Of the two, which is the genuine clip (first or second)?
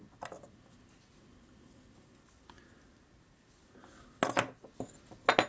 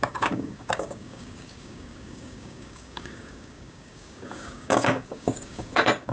first